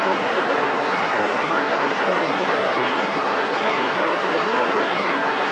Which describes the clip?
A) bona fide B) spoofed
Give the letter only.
B